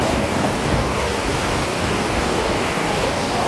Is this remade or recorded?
remade